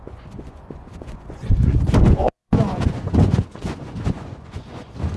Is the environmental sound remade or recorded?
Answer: remade